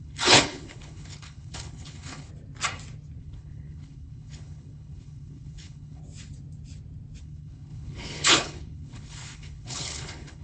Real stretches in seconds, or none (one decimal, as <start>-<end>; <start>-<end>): 2.3-3.2; 6.0-7.2